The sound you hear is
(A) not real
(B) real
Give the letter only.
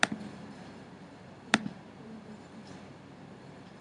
A